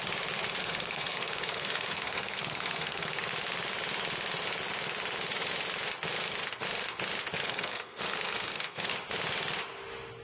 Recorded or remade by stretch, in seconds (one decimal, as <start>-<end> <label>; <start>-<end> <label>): 0.0-0.6 recorded; 0.6-3.3 remade; 3.3-7.4 recorded; 7.4-8.9 remade; 8.9-10.2 recorded